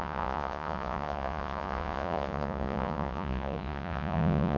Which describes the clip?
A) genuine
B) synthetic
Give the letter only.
B